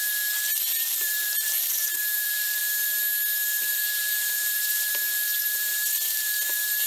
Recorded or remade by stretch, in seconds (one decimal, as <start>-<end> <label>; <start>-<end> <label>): 0.0-0.5 recorded; 0.5-2.6 remade; 2.6-3.5 recorded; 3.5-4.9 remade; 4.9-5.4 recorded; 5.4-6.9 remade